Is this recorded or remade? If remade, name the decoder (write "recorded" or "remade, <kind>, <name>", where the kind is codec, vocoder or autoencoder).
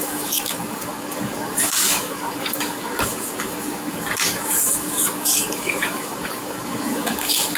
remade, codec, DAC